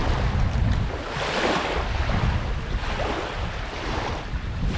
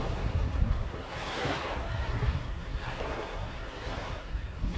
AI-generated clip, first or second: second